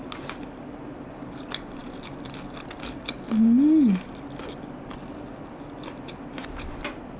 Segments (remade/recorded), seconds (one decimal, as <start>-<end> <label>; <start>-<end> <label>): 0.0-7.2 recorded